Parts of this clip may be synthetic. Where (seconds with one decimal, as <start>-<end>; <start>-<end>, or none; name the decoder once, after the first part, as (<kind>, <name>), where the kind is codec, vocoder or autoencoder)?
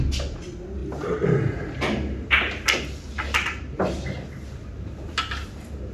none